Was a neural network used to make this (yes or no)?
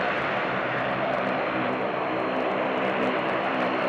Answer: yes